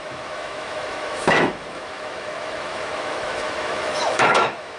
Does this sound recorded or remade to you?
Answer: remade